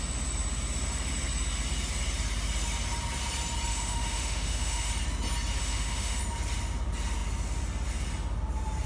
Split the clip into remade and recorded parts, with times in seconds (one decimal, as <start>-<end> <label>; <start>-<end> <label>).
0.0-3.7 recorded; 3.7-4.9 remade; 4.9-5.6 recorded; 5.6-6.2 remade; 6.2-8.9 recorded